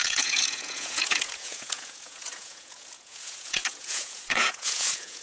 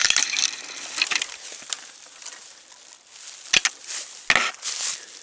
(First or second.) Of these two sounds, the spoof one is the first